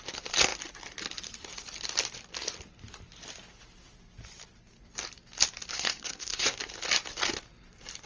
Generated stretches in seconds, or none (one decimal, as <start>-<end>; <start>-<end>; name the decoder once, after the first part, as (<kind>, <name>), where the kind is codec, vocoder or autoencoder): 5.7-6.6 (codec, SNAC)